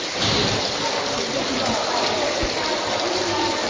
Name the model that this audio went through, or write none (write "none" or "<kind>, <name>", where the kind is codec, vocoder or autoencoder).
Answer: none